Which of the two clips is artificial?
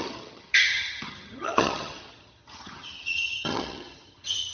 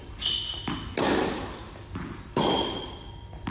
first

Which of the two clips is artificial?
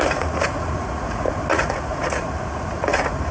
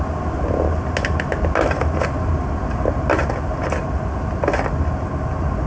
first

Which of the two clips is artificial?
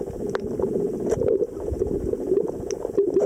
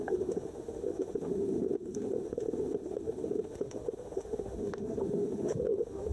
second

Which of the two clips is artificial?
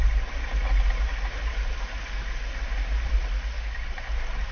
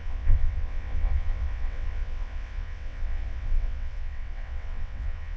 second